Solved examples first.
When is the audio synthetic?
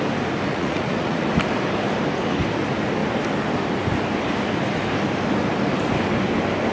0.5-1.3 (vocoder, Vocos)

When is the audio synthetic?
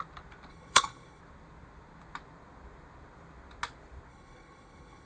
0.5-1.2 (codec, HILCodec); 4.1-5.1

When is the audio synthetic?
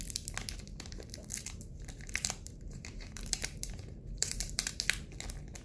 1.4-4.8 (vocoder, BigVGAN v2)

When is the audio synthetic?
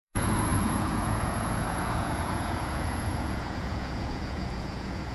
0.0-5.1 (vocoder, Vocos)